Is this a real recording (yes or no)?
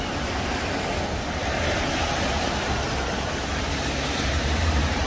yes